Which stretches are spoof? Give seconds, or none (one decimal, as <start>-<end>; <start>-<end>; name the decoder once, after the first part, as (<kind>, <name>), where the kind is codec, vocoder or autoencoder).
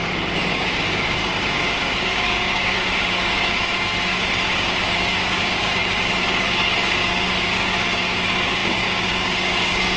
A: 0.0-10.0 (codec, DAC)